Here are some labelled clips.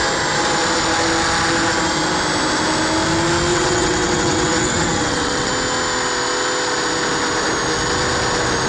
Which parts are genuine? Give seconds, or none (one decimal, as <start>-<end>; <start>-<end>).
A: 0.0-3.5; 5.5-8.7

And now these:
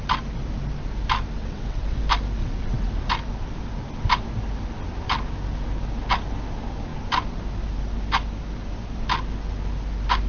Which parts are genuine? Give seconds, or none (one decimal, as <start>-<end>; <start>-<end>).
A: 0.0-1.4; 2.0-2.4; 3.1-10.3

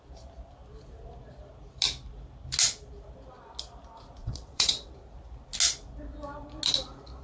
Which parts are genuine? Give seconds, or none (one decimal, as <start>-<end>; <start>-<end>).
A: 0.0-4.2; 4.9-7.2

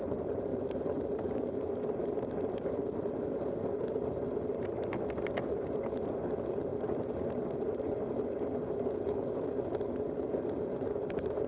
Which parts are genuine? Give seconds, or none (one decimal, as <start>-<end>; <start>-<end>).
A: 0.0-11.5

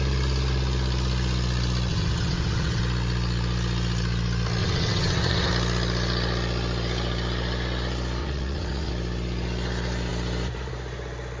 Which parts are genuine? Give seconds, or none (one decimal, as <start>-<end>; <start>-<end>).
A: 0.0-1.9; 2.8-4.6; 5.5-8.2; 8.9-11.4

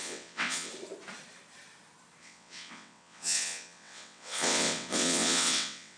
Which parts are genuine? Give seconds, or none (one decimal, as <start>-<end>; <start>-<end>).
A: 0.7-2.2

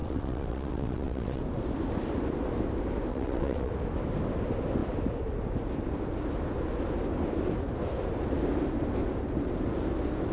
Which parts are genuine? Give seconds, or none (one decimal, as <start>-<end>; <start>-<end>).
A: 1.4-3.1; 3.7-10.3